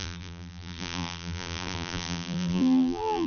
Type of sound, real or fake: fake